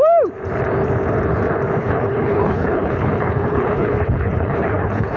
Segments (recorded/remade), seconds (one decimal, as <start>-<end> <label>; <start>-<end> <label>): 0.0-1.8 recorded; 1.8-5.2 remade